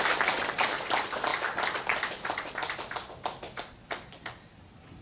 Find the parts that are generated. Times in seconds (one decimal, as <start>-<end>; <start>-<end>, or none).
none